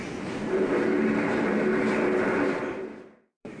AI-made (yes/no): yes